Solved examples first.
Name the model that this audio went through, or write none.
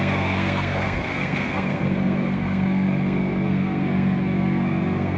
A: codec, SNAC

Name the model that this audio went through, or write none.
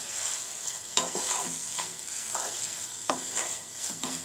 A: codec, SNAC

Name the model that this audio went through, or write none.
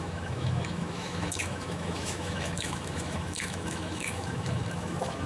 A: autoencoder, DAC-VAE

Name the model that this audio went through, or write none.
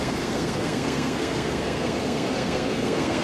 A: codec, SNAC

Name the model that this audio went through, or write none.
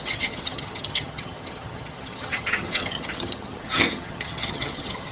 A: vocoder, HiFi-GAN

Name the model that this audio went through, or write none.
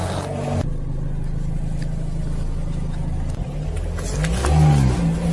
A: none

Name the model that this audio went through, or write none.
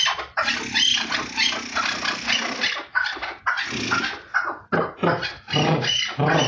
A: none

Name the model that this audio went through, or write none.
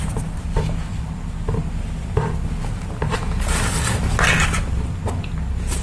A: none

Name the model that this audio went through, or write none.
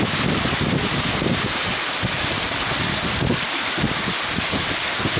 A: none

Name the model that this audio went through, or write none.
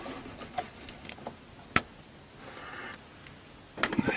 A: none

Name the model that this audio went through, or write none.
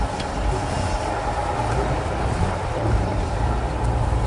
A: none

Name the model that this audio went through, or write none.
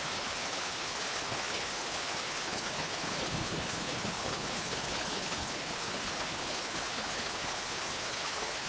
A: codec, HILCodec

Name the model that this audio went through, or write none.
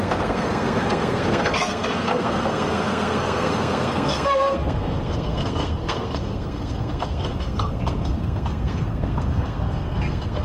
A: codec, SNAC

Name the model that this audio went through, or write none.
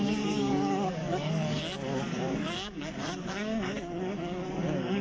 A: codec, DAC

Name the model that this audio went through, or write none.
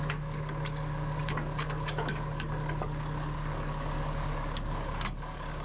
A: codec, DAC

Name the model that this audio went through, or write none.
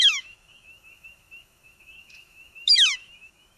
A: autoencoder, DAC-VAE